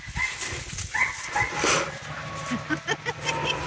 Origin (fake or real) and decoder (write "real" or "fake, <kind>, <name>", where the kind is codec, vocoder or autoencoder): real